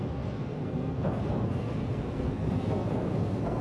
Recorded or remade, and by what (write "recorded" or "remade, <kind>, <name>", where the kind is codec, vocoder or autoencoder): remade, codec, SNAC